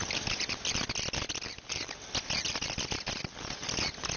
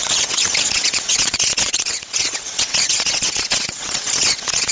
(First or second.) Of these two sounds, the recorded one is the first